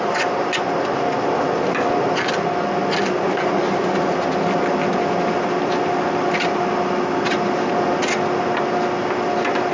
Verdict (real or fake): real